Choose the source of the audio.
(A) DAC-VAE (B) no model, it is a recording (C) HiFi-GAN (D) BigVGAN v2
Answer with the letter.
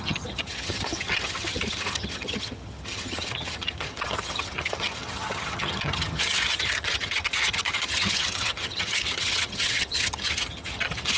C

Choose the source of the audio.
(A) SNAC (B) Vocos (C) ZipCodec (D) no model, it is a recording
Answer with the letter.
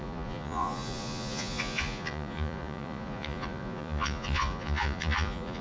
B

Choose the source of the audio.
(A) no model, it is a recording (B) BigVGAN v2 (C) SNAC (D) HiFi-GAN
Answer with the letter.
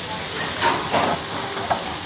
A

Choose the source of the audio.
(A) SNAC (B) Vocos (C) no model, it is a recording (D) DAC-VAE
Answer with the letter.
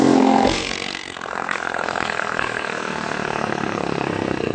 A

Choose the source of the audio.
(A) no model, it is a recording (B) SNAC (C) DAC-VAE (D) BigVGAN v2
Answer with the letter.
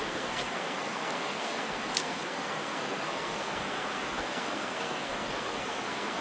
B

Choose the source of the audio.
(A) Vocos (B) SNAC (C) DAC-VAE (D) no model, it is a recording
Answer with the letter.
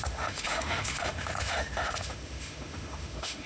C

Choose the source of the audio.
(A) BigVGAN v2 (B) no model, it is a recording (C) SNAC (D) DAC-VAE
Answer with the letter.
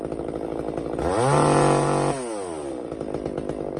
B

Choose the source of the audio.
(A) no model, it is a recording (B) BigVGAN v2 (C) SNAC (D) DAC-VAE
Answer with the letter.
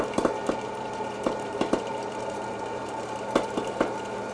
B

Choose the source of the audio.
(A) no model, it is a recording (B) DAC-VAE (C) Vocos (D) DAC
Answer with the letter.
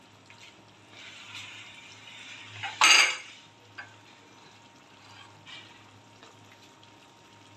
A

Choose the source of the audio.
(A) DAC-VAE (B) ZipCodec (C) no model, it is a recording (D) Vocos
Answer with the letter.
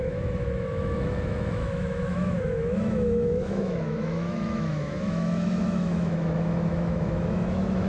A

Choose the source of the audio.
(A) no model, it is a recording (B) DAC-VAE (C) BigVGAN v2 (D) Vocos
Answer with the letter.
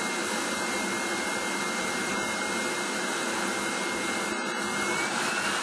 A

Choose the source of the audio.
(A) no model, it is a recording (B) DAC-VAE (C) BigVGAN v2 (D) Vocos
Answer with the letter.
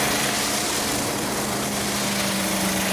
A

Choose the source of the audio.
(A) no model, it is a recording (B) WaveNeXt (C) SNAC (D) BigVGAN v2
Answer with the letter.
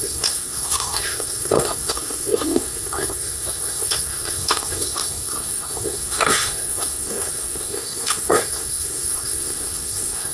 C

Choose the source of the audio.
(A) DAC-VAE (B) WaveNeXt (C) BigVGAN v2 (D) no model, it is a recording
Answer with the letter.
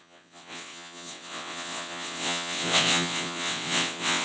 B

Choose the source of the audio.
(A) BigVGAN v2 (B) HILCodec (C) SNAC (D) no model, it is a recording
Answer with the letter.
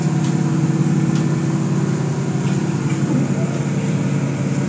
D